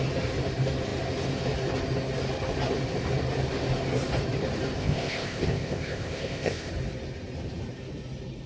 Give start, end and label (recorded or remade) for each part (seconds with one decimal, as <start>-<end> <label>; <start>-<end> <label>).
0.0-4.8 recorded; 4.8-6.7 remade; 6.7-8.5 recorded